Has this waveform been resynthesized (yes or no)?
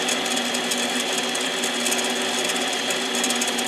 no